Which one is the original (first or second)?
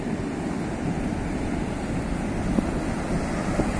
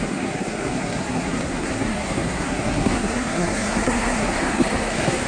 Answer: first